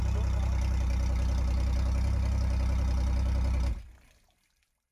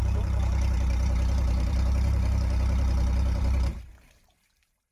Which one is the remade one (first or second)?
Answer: second